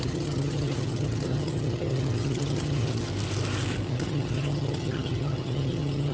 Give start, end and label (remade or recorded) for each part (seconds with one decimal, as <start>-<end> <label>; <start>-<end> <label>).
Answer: 0.0-3.1 remade; 3.1-3.9 recorded; 3.9-6.1 remade

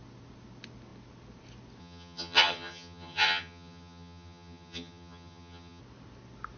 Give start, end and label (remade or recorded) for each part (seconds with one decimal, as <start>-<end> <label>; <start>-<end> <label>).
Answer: 0.0-1.8 recorded; 1.8-5.8 remade; 5.8-6.6 recorded

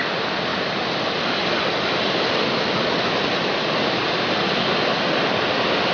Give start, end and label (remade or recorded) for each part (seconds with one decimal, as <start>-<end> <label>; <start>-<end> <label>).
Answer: 0.0-5.9 recorded

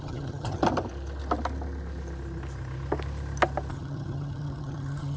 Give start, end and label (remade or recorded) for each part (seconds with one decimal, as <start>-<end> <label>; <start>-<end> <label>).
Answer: 0.0-0.6 remade; 0.6-3.7 recorded; 3.7-5.2 remade